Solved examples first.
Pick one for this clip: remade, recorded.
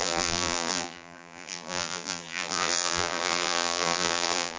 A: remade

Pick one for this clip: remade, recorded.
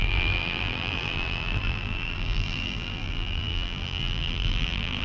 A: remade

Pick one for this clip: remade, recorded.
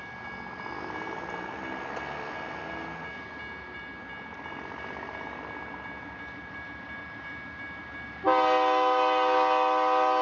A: recorded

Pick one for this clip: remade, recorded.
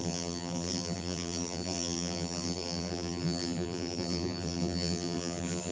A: remade